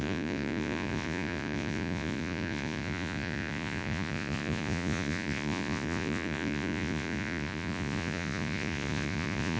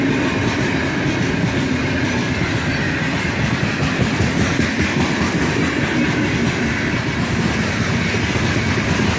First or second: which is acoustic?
second